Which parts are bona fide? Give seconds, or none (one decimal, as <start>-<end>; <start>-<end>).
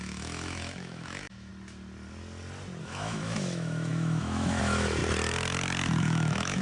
1.5-2.8; 5.0-6.0